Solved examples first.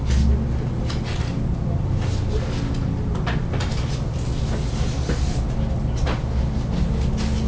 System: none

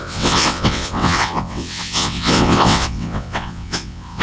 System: vocoder, WaveNeXt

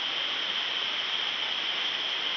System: none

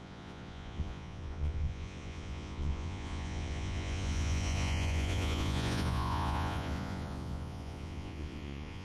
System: vocoder, Vocos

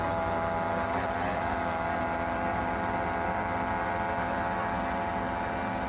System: none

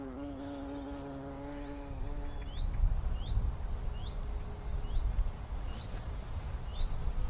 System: none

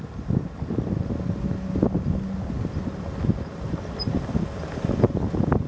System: none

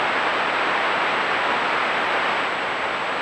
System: none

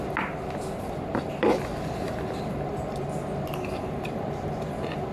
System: none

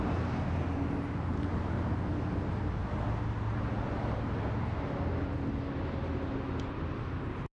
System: none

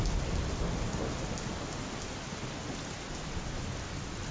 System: none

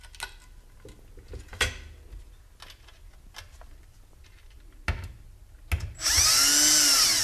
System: none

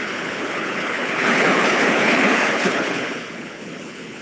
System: codec, HILCodec